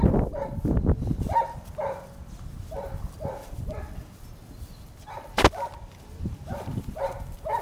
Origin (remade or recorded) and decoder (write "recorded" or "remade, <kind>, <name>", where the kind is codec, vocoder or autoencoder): remade, vocoder, BigVGAN v2